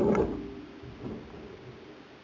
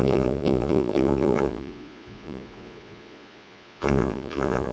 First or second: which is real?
first